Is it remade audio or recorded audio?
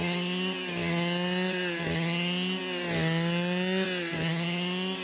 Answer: recorded